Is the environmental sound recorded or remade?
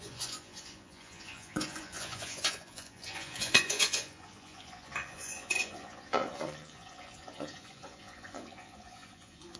remade